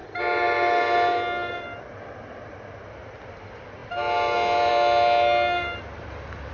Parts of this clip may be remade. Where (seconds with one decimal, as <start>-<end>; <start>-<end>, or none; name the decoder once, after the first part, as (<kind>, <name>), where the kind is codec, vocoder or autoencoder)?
none